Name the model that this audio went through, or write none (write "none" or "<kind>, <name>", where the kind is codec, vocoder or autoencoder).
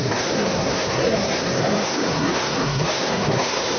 codec, SNAC